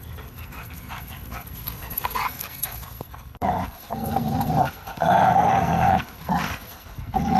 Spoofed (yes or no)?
yes